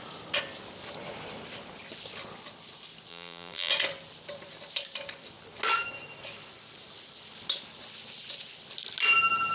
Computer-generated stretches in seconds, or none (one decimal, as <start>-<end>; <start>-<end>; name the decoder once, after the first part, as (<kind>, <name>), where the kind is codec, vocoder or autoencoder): 3.1-3.7 (vocoder, BigVGAN v2)